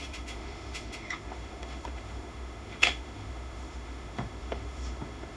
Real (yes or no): no